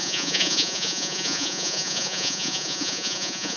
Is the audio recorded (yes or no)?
no